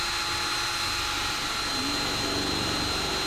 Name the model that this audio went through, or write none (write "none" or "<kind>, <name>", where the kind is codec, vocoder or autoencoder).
none